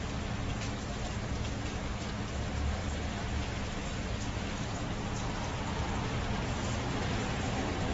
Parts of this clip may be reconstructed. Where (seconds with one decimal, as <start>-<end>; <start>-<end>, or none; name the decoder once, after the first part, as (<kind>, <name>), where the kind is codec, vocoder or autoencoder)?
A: 2.8-4.2 (vocoder, BigVGAN v2)